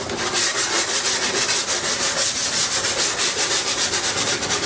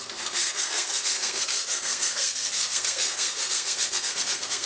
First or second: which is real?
first